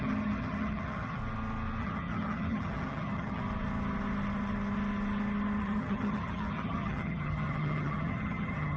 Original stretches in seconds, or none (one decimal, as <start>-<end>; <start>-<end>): 1.2-1.8; 3.4-5.6